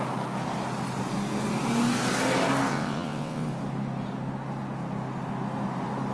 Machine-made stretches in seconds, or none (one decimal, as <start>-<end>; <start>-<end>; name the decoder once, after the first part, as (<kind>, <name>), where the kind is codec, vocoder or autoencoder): 2.7-3.5 (vocoder, WaveNeXt)